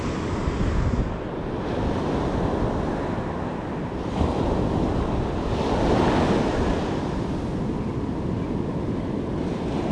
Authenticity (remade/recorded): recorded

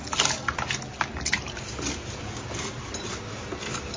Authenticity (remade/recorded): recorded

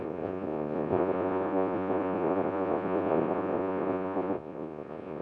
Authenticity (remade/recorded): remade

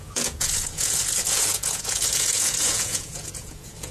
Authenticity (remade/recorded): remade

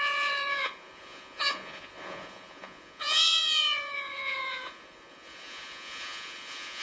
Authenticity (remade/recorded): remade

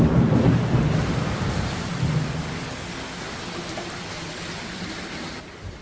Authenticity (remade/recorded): recorded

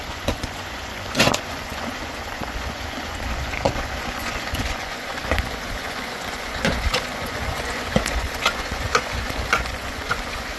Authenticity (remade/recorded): remade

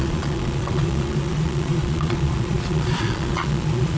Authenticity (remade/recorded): remade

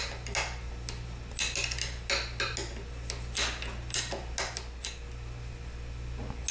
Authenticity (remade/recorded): recorded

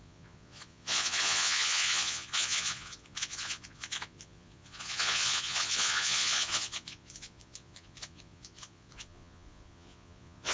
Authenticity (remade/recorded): remade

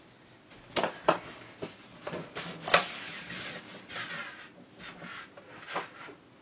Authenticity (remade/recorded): recorded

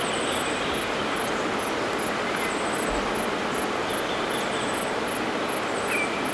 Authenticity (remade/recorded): recorded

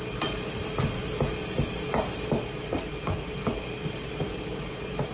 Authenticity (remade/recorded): recorded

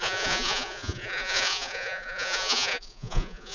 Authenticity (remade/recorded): remade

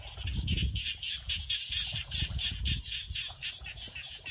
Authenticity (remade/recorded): remade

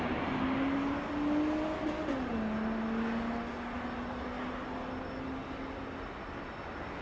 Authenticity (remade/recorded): recorded